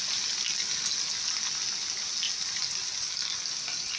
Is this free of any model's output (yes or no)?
yes